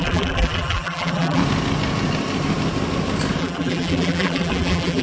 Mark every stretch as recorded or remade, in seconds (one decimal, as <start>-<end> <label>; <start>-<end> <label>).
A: 0.0-1.4 remade; 1.4-3.4 recorded; 3.4-5.0 remade